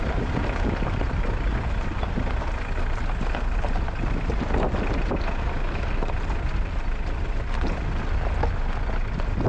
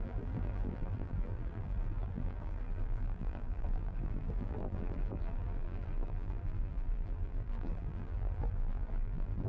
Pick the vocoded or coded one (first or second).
second